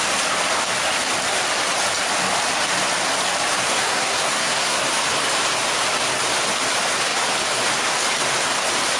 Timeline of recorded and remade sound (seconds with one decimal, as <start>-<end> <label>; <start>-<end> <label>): 0.0-3.8 recorded; 3.8-4.8 remade; 4.8-9.0 recorded